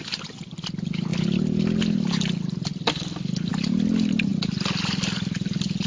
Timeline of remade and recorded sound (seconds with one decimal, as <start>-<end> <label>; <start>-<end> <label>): 0.0-5.9 recorded